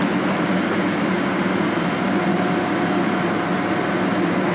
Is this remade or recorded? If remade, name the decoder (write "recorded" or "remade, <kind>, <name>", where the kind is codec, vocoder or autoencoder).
recorded